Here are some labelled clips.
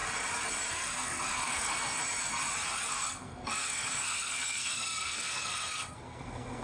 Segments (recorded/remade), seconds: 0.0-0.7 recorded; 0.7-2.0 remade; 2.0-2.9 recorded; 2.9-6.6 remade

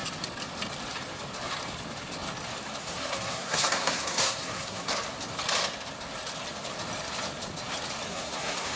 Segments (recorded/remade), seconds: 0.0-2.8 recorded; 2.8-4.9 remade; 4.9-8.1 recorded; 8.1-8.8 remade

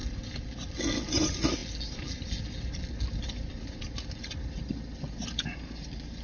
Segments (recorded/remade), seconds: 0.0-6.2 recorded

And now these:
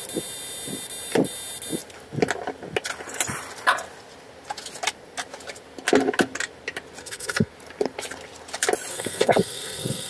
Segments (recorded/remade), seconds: 0.0-7.0 recorded; 7.0-7.5 remade; 7.5-8.9 recorded; 8.9-10.1 remade